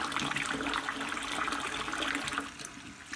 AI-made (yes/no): no